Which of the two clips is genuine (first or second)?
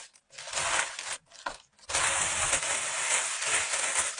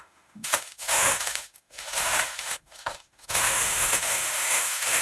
first